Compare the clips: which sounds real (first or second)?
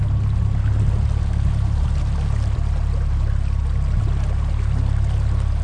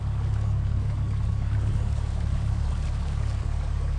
first